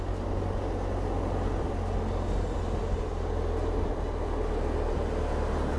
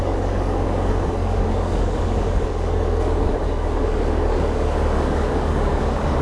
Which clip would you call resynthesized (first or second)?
second